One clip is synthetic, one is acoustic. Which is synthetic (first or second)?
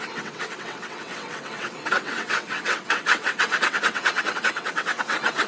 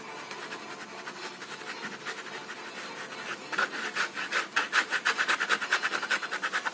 first